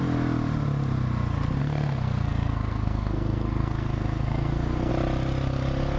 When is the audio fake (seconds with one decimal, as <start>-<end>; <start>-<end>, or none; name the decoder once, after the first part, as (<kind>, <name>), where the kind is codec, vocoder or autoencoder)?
1.6-4.9 (codec, SNAC)